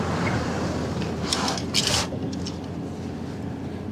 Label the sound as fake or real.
real